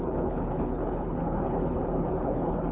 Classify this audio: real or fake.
fake